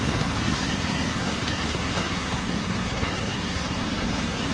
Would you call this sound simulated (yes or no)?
yes